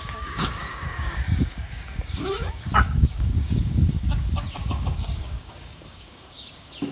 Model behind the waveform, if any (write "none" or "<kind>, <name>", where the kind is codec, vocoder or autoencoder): codec, DAC